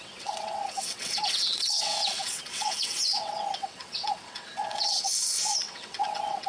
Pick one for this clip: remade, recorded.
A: remade